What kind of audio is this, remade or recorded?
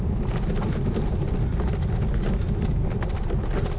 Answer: recorded